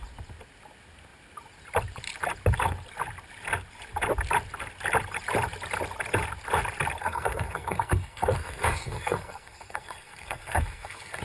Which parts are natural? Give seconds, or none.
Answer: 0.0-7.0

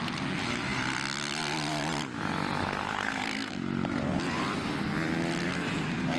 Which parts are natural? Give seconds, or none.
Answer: 0.0-2.6; 3.5-6.2

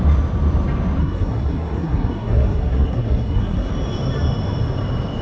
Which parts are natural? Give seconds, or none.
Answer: 0.0-1.0; 3.7-5.2